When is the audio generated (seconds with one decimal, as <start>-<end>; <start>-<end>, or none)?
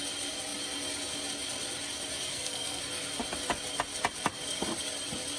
2.3-2.8